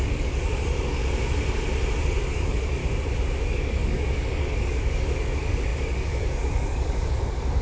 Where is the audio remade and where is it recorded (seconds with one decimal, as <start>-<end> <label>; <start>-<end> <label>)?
0.0-1.0 remade; 1.0-2.2 recorded; 2.2-2.8 remade; 2.8-3.4 recorded; 3.4-7.6 remade